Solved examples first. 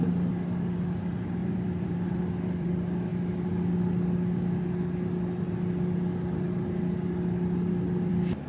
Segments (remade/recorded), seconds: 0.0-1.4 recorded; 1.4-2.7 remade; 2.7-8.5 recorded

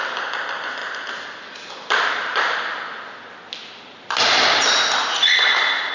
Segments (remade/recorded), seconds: 0.0-5.9 recorded

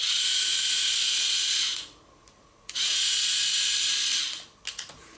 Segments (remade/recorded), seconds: 0.0-4.1 remade; 4.1-4.7 recorded; 4.7-5.2 remade

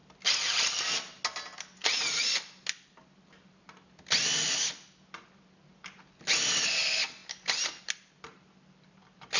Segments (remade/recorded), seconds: 0.0-9.4 recorded

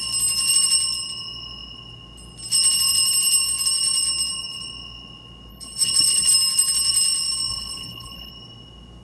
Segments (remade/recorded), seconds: 0.0-5.5 recorded; 5.5-6.3 remade; 6.3-7.5 recorded; 7.5-8.3 remade; 8.3-9.0 recorded

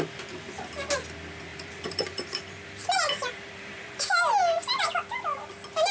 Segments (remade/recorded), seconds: 0.0-1.5 recorded; 1.5-4.8 remade; 4.8-5.9 recorded